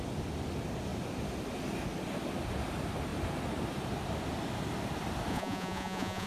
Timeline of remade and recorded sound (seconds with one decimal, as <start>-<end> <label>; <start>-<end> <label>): 0.0-5.3 recorded; 5.3-6.3 remade